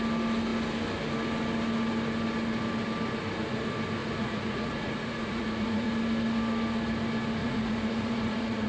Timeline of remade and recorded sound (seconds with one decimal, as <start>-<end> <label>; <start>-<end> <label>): 0.0-4.0 recorded; 4.0-5.9 remade; 5.9-7.4 recorded; 7.4-8.7 remade